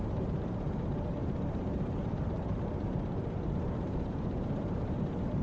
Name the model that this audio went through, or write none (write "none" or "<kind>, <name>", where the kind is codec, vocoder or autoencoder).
vocoder, BigVGAN v2